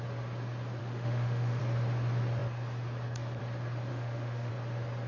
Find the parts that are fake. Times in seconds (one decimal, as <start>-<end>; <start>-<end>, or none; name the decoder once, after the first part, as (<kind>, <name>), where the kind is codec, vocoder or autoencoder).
0.8-1.6 (autoencoder, DAC-VAE); 3.9-4.5